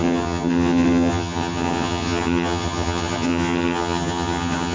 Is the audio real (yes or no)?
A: no